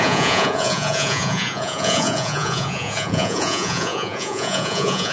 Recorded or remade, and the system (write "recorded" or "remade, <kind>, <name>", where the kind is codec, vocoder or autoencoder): remade, vocoder, Vocos